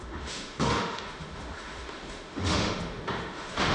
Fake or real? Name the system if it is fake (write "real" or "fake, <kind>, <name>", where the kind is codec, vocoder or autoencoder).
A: fake, autoencoder, DAC-VAE